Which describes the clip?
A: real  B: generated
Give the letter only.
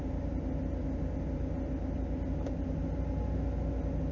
A